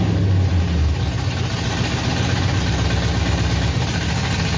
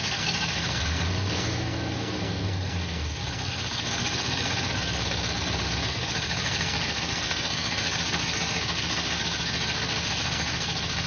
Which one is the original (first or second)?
first